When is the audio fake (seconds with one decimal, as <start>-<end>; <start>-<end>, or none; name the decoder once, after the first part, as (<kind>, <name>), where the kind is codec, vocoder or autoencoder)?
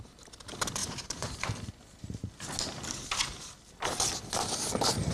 0.8-1.7 (vocoder, BigVGAN v2)